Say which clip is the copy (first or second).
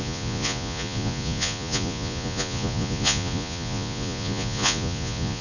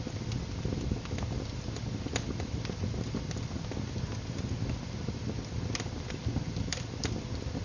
first